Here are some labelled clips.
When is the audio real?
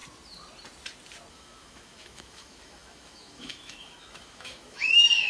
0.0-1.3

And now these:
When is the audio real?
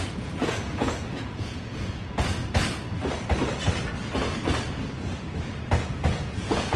2.4-5.8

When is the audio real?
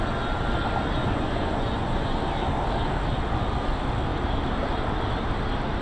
0.0-1.0; 2.2-5.8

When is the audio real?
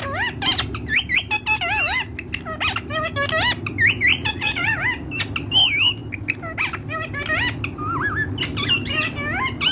0.0-4.1; 4.8-9.7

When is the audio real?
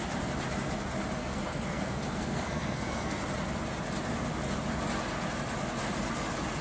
0.0-1.2; 3.2-6.6